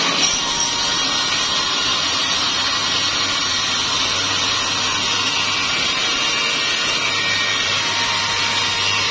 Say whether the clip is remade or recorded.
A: recorded